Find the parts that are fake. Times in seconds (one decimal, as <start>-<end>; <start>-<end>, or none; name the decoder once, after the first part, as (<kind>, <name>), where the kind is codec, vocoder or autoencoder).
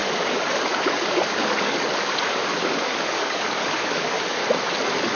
0.0-4.4 (codec, DAC)